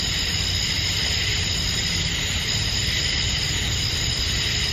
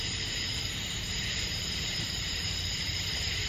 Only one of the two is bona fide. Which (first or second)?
first